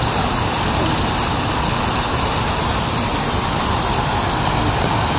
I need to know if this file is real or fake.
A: real